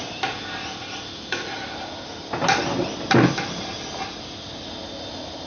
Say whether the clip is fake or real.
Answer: real